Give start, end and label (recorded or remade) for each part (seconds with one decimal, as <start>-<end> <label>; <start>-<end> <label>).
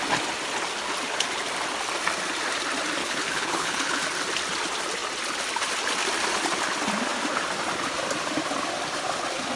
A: 0.0-3.0 recorded; 3.0-4.0 remade; 4.0-9.6 recorded